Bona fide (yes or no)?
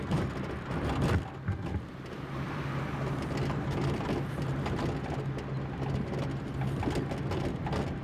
yes